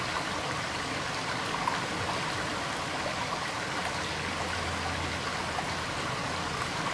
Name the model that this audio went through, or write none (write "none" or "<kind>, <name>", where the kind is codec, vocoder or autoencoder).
none